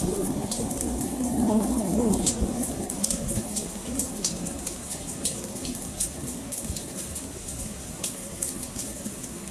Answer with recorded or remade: remade